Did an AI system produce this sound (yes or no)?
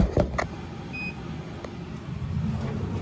no